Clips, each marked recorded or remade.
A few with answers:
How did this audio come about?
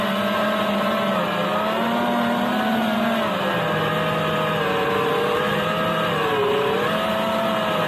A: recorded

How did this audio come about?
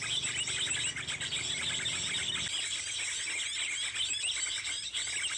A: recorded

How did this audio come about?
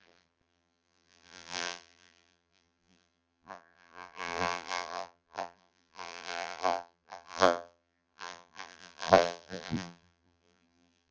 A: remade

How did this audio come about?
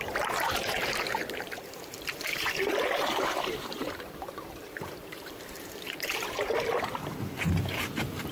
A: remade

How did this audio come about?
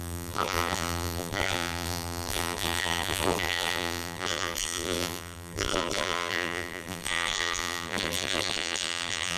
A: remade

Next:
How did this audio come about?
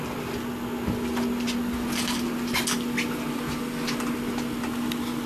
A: recorded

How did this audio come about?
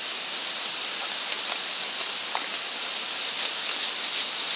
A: recorded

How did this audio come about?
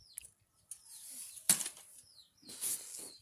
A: recorded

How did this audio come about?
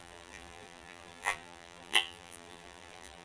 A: remade